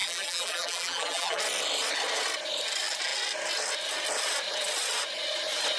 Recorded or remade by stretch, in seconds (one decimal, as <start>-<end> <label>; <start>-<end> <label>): 0.0-1.4 remade; 1.4-5.8 recorded